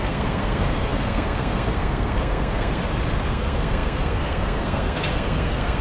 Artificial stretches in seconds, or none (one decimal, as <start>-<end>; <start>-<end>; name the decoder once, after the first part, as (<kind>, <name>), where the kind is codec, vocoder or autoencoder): 0.0-2.8 (codec, SNAC); 3.3-5.8